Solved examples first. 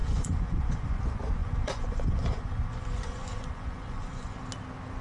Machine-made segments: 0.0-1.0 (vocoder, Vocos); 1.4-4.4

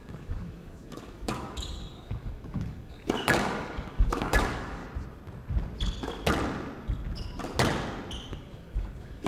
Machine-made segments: 0.0-4.8 (codec, DAC); 8.3-9.3

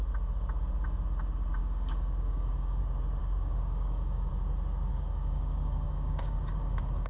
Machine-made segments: 1.6-2.8 (codec, DAC); 3.2-4.3; 4.9-7.1

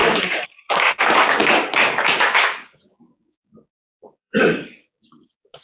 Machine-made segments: 0.0-5.6 (codec, DAC)

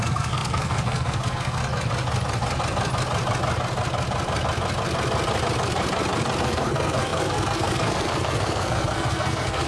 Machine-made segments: 0.0-1.6 (codec, SNAC); 6.4-9.7

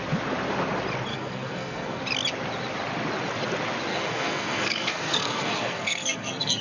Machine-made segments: 1.1-2.0 (codec, SNAC); 3.9-6.6

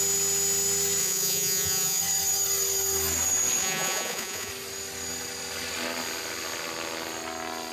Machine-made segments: 1.0-2.0 (vocoder, Vocos); 3.6-4.5